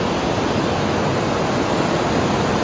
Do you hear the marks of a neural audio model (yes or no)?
no